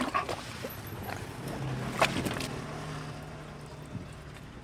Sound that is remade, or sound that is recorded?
recorded